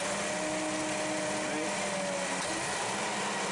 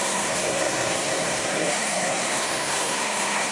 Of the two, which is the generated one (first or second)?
second